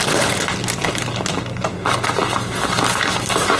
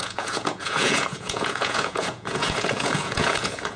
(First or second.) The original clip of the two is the first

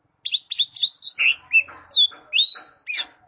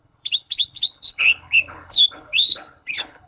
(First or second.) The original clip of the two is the first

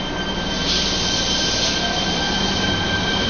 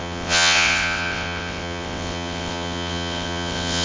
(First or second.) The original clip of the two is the first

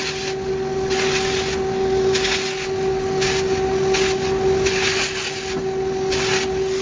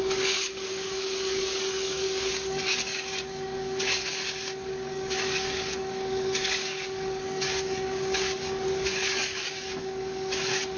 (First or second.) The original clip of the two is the first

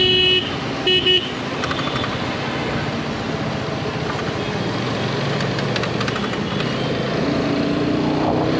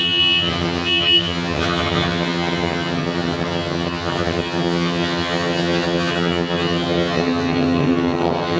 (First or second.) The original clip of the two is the first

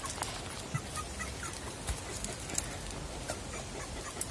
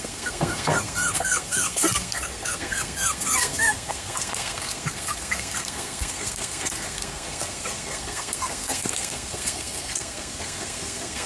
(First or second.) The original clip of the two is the first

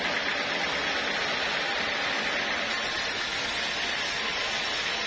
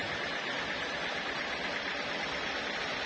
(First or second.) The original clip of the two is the first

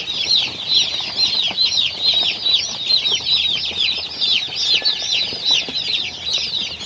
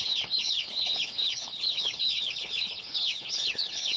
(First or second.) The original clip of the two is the first